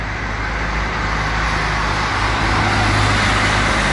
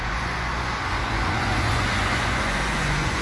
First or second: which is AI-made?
second